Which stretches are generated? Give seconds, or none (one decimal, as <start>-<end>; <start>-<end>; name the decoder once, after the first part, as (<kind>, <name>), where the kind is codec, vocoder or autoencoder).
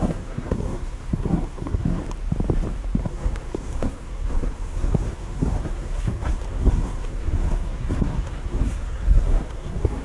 0.0-2.0 (codec, SNAC); 3.0-10.0